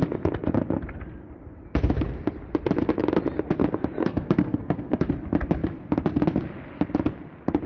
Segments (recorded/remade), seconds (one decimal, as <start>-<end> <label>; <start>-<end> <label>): 0.0-4.0 recorded; 4.0-5.1 remade; 5.1-7.7 recorded